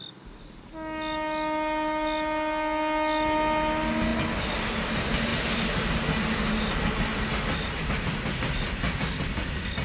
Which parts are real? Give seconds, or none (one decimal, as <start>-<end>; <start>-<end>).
0.0-9.8